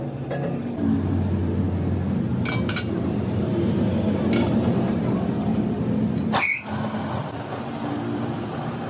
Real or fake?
real